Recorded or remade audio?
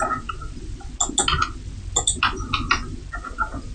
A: recorded